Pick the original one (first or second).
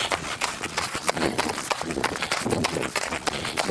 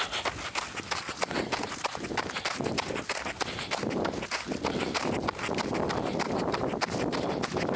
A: second